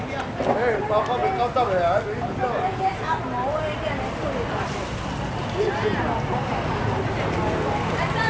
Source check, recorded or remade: recorded